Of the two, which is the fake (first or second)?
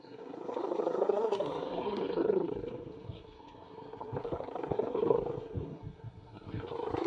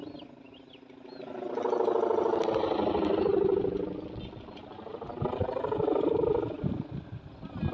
first